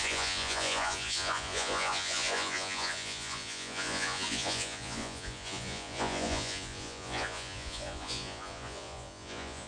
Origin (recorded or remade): remade